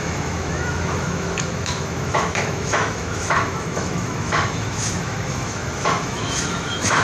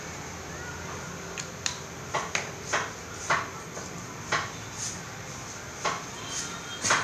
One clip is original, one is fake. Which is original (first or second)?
second